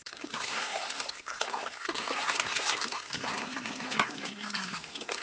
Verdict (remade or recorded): remade